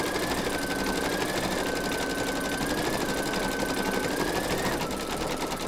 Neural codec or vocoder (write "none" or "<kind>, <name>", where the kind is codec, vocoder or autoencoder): none